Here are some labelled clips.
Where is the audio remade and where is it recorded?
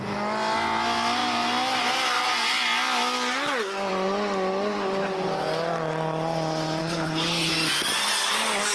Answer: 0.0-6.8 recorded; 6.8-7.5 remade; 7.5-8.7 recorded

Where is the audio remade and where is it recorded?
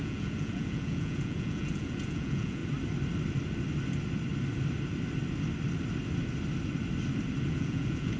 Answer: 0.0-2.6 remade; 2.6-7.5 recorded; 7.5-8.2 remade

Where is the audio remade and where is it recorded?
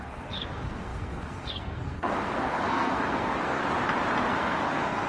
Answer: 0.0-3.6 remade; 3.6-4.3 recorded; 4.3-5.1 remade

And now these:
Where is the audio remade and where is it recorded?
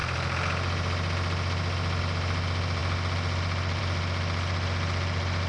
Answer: 0.0-5.5 recorded